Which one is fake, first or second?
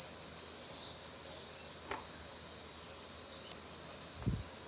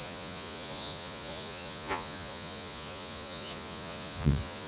second